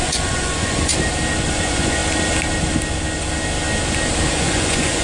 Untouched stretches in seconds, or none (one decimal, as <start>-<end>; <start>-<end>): 0.9-1.5; 2.0-4.3

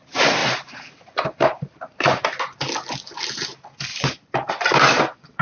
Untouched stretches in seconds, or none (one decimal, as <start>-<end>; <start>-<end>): 0.0-0.4; 2.4-3.9; 4.5-5.4